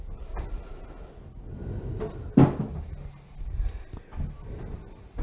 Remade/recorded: recorded